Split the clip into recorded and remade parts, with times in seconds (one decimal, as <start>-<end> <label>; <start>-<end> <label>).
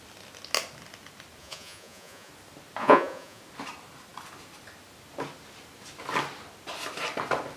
0.0-1.4 recorded; 1.4-2.3 remade; 2.3-2.8 recorded; 2.8-3.4 remade; 3.4-7.6 recorded